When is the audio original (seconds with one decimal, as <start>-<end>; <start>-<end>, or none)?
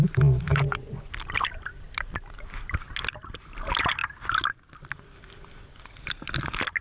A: 0.0-0.5; 1.1-6.8